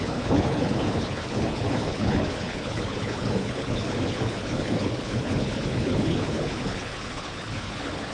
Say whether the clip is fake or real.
fake